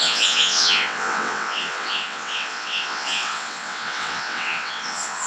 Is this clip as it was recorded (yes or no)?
no